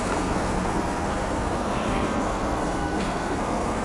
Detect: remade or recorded remade